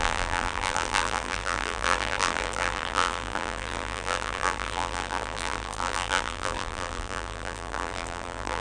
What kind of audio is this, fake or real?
fake